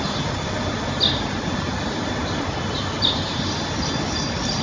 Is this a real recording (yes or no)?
yes